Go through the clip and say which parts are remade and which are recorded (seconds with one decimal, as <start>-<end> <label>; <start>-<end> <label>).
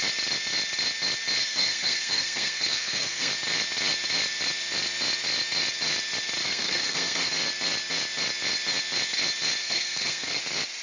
0.0-1.4 recorded; 1.4-3.3 remade; 3.3-6.4 recorded; 6.4-7.3 remade; 7.3-9.6 recorded; 9.6-10.4 remade; 10.4-10.8 recorded